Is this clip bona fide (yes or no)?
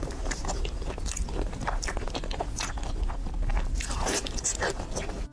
yes